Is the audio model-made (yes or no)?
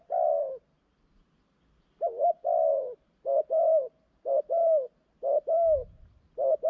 no